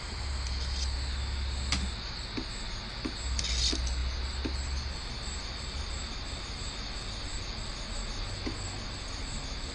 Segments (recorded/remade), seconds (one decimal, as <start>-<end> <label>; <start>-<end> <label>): 0.0-9.7 recorded